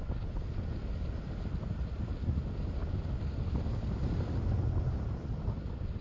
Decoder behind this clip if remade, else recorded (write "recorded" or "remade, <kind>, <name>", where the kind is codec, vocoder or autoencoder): recorded